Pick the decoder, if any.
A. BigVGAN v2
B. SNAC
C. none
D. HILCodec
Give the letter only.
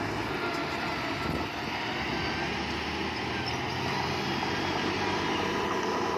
C